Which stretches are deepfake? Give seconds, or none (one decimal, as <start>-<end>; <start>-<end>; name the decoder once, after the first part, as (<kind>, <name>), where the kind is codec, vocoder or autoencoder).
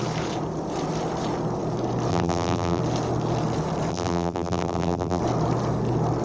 2.1-2.8 (vocoder, BigVGAN v2); 3.9-5.2